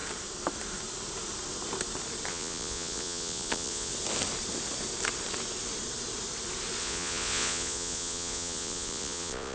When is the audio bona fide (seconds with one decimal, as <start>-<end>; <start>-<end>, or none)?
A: 0.0-2.3; 3.9-6.8